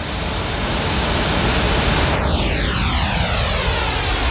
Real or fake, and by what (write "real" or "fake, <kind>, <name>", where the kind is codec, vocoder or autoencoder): real